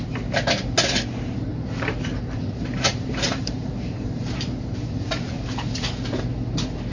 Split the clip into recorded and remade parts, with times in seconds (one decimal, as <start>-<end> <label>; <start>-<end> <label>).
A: 0.0-1.5 recorded; 1.5-5.4 remade; 5.4-6.9 recorded